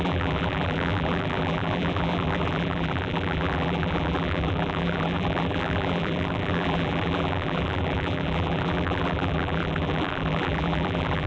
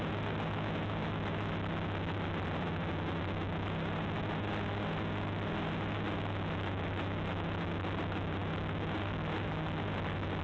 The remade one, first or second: first